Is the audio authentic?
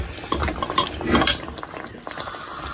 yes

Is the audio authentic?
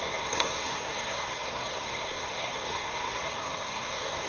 no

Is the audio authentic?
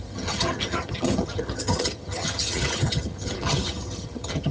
no